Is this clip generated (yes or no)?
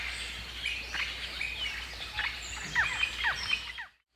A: no